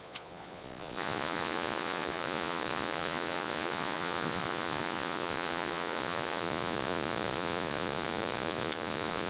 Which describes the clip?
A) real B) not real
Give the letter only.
B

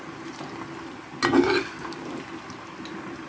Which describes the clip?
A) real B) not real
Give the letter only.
A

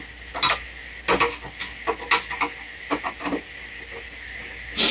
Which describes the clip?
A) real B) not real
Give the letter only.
A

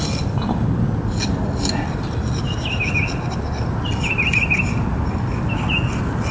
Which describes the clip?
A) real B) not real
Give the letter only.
A